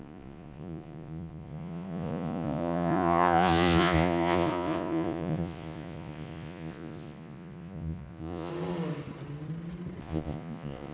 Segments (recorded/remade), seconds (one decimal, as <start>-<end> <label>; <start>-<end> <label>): 0.0-8.5 remade; 8.5-10.0 recorded; 10.0-10.9 remade